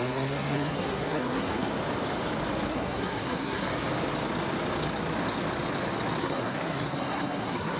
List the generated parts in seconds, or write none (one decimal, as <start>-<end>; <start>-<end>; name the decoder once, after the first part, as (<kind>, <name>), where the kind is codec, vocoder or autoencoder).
0.0-1.7 (codec, SNAC); 2.7-3.7; 6.2-7.8

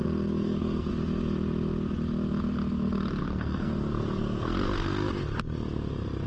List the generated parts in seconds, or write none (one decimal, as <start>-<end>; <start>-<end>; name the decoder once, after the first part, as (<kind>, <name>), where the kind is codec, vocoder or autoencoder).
0.0-0.9 (codec, SNAC); 3.2-5.1

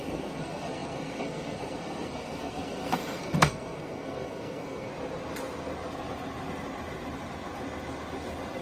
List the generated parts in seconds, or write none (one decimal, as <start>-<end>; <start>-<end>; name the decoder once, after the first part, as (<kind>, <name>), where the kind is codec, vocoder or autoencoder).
0.0-4.9 (codec, SNAC)

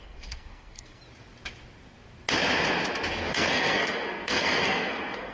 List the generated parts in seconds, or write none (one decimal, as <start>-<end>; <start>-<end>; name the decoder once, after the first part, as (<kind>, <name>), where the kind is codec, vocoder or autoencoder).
0.0-1.0 (codec, SNAC); 3.1-5.3

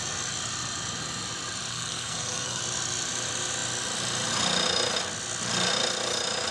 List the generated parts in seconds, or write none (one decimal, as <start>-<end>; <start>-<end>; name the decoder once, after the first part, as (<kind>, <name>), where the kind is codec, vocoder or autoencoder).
1.7-2.6 (codec, SNAC)

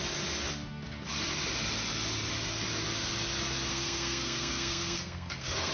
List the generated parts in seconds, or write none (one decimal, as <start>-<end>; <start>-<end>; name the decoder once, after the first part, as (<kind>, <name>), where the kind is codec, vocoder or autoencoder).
3.7-5.7 (codec, SNAC)

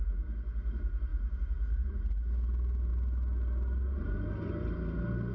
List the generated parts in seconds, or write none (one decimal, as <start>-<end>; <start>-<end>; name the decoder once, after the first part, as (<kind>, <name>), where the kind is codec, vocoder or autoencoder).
none